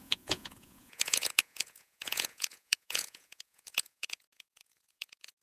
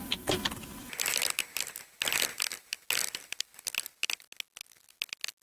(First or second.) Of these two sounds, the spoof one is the first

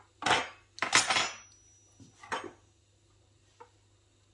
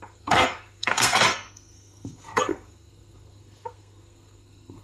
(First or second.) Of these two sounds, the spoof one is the second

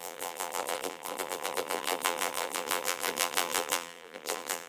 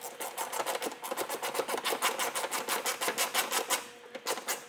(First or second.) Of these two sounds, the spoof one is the first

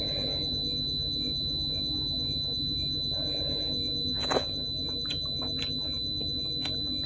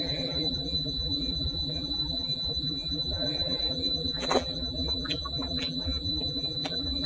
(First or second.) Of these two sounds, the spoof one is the second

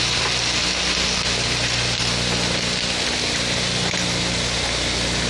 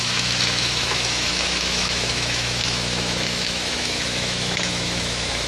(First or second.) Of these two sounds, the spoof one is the second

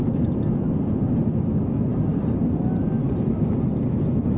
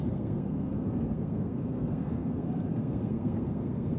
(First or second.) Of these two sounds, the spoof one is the second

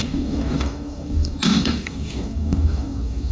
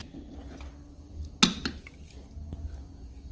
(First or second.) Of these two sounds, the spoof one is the first